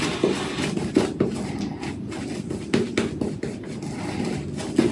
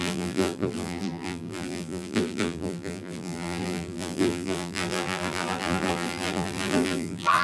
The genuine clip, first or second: first